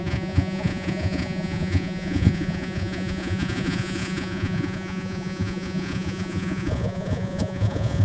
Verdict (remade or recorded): remade